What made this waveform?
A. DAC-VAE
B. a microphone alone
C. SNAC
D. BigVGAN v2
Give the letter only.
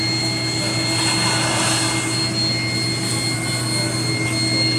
B